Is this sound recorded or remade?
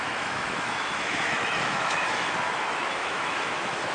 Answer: remade